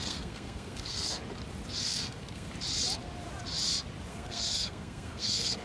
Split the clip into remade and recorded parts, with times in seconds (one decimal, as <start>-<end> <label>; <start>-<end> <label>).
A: 0.0-1.2 remade; 1.2-1.8 recorded; 1.8-2.5 remade; 2.5-4.1 recorded; 4.1-5.6 remade

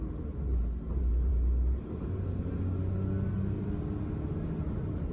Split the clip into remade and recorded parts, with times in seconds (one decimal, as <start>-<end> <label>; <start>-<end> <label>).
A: 0.0-5.1 recorded